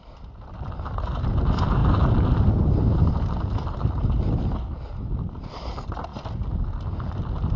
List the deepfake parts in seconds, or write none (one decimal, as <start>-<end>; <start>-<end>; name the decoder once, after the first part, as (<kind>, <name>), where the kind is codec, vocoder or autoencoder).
none